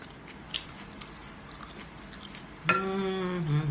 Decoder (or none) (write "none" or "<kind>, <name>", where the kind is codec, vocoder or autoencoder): none